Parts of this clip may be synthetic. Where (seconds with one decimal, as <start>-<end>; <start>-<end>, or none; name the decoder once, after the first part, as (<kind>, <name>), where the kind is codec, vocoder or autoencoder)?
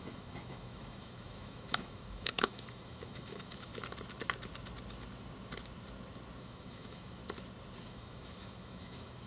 0.0-3.7 (autoencoder, DAC-VAE); 6.4-7.2; 7.8-9.3